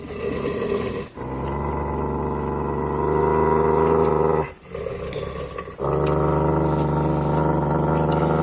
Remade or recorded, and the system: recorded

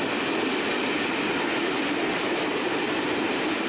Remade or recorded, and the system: recorded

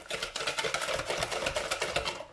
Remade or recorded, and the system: recorded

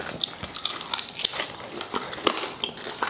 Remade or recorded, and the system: recorded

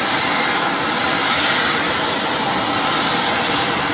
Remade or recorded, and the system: remade, vocoder, BigVGAN v2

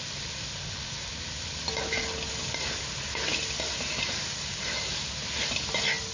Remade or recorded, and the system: recorded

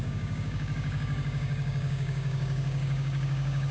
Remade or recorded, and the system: remade, codec, DAC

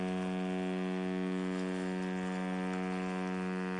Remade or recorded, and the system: recorded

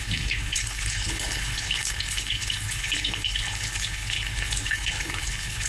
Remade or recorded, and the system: remade, codec, HILCodec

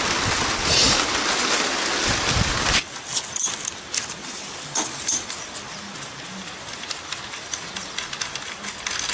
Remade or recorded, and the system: recorded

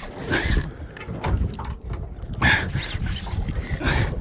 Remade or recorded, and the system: recorded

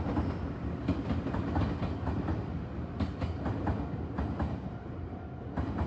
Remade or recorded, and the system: recorded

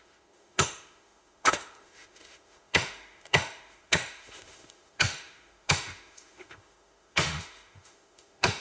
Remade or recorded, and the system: remade, autoencoder, DAC-VAE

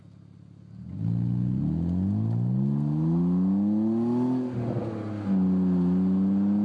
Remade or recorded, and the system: recorded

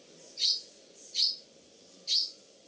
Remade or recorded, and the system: remade, vocoder, Vocos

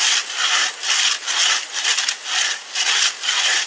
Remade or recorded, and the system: recorded